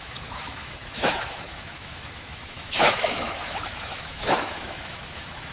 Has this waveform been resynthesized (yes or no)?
yes